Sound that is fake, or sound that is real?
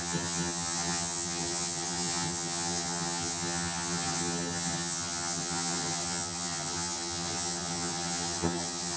fake